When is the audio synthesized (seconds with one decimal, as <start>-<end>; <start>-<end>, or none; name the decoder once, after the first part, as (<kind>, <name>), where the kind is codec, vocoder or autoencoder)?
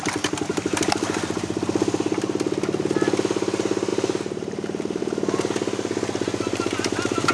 0.5-1.6 (vocoder, BigVGAN v2); 3.9-5.0